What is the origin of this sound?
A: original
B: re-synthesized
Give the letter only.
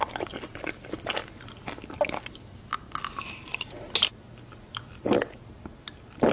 A